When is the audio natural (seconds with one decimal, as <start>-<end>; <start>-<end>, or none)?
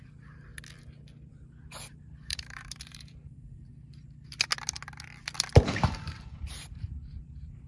0.5-1.3; 3.7-6.0